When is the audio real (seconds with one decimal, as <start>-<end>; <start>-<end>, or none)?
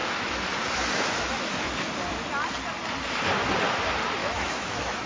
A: 1.9-4.2